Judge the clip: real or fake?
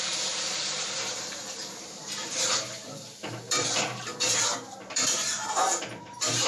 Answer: fake